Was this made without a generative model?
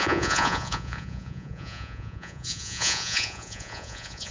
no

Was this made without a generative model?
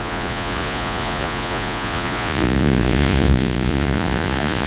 no